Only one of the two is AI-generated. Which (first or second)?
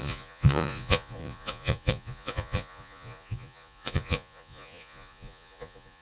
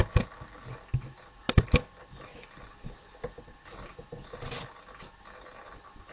first